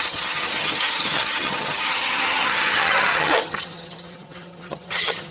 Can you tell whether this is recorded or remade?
remade